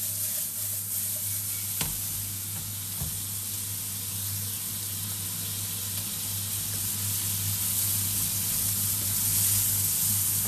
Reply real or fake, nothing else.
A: real